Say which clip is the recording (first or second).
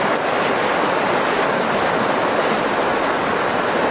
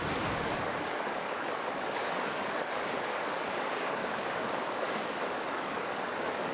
first